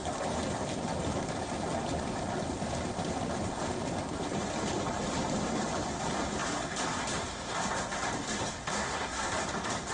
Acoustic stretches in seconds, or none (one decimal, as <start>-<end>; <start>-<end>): 0.0-8.7; 9.3-9.9